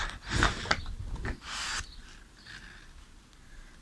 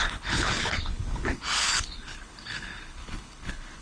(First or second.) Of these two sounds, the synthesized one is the second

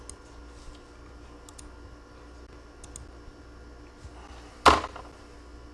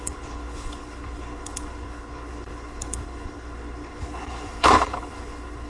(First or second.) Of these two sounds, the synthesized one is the second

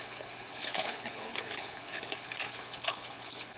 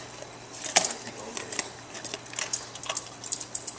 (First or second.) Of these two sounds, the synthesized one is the first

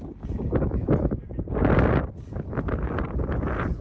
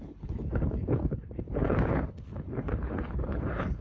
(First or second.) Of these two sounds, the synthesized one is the second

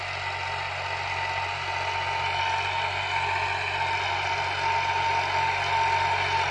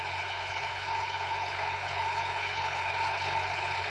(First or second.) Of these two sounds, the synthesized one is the second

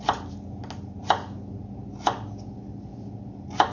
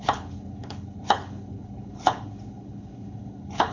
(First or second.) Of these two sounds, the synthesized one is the second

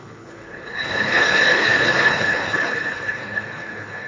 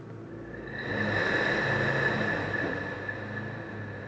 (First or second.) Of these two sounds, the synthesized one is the first